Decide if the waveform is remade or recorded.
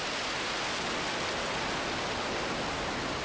recorded